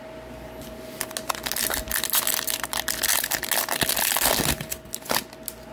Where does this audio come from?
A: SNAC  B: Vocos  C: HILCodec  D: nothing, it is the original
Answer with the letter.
D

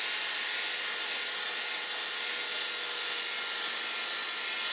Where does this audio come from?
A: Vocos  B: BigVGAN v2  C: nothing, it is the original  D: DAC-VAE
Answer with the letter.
C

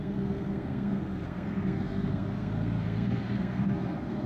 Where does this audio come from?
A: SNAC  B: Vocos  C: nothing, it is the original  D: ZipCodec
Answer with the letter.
A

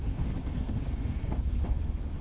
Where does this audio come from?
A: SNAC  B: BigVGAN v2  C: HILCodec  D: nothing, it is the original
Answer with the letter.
A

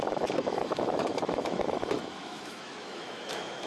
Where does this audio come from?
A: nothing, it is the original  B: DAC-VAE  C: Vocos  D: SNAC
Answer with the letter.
B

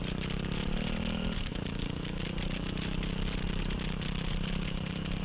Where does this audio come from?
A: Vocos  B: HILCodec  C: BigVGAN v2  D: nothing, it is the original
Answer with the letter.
C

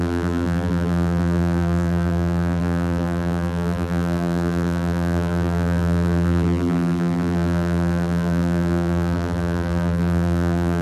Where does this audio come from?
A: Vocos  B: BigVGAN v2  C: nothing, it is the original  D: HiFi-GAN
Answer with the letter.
B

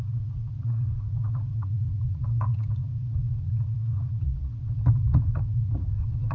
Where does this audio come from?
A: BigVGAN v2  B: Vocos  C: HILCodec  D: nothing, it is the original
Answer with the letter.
B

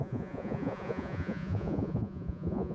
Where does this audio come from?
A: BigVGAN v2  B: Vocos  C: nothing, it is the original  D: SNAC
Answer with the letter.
B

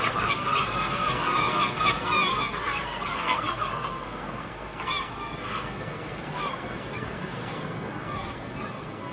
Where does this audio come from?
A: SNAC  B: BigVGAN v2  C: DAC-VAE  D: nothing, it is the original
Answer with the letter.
A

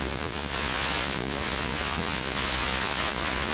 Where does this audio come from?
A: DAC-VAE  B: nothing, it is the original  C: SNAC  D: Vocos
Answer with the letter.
D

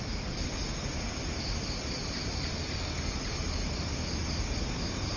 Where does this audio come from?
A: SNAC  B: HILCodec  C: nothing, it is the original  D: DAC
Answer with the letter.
C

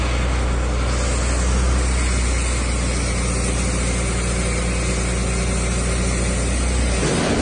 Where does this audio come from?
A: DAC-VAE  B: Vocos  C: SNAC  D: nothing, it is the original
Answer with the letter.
D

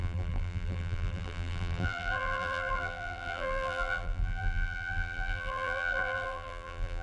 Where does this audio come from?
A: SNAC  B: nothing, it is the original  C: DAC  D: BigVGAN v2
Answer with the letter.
D